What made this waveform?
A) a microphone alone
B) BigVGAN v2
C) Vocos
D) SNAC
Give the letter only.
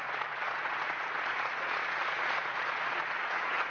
C